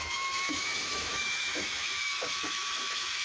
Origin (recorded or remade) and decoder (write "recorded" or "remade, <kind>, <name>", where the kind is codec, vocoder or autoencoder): remade, autoencoder, DAC-VAE